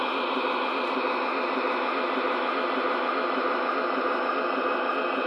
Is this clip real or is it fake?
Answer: real